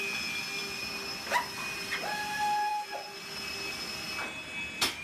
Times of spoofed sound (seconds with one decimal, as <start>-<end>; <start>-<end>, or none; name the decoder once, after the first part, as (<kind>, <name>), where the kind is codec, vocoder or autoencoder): none